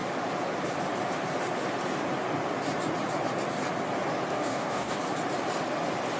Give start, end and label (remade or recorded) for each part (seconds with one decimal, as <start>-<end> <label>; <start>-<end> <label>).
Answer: 0.0-4.3 recorded; 4.3-5.0 remade; 5.0-6.2 recorded